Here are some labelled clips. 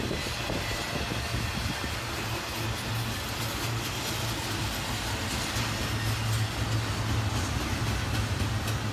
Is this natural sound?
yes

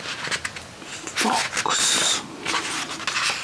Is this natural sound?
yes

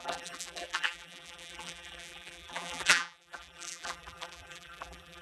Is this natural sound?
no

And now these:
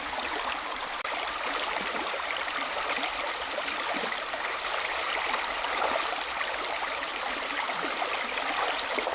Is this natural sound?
no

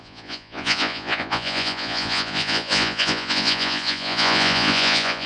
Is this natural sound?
no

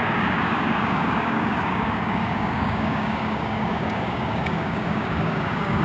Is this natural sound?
no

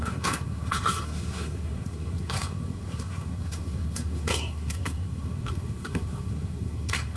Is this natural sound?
no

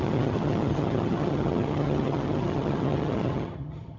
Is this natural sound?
no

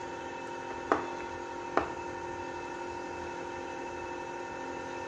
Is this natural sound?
yes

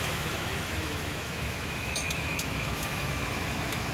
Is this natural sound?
no